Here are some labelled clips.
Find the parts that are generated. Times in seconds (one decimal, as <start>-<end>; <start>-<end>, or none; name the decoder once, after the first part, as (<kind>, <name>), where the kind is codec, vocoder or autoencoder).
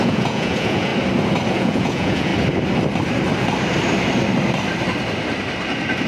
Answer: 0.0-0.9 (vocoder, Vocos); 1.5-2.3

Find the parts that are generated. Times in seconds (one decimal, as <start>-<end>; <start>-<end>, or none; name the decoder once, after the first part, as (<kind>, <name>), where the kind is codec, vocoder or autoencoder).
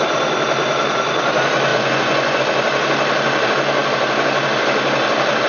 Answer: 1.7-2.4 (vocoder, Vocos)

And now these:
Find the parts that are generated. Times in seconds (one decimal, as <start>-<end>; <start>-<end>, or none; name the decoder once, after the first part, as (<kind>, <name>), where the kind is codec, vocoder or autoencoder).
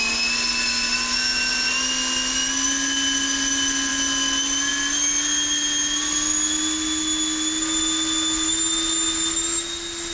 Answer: none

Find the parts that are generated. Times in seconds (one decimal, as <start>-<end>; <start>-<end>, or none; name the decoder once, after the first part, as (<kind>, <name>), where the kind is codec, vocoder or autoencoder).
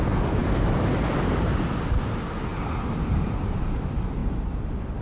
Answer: 0.4-0.9 (vocoder, BigVGAN v2); 2.5-3.8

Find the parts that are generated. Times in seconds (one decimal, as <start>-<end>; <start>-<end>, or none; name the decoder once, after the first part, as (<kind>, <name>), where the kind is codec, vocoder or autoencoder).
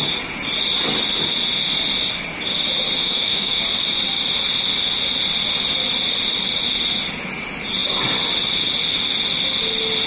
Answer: 3.0-3.6 (autoencoder, DAC-VAE)